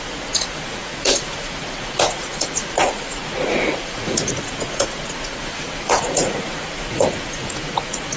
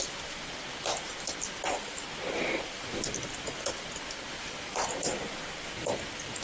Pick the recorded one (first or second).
second